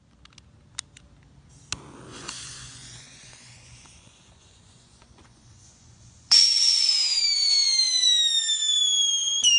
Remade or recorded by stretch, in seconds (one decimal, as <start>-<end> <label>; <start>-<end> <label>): 0.0-2.1 recorded; 2.1-6.9 remade; 6.9-9.6 recorded